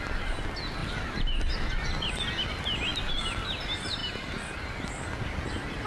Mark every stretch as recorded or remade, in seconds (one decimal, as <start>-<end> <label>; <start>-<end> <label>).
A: 0.0-0.8 recorded; 0.8-1.6 remade; 1.6-5.9 recorded